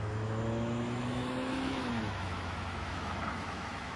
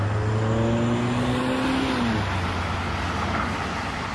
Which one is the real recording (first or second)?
second